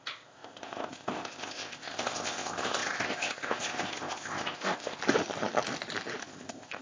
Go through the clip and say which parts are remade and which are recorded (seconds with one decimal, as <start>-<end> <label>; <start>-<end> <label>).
0.0-5.0 remade; 5.0-6.2 recorded; 6.2-6.8 remade